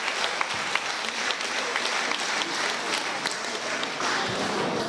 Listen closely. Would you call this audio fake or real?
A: real